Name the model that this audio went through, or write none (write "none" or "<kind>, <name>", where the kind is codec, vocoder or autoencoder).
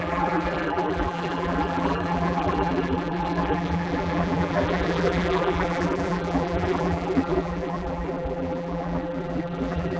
vocoder, BigVGAN v2